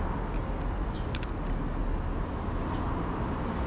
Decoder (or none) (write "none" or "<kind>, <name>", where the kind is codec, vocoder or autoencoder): none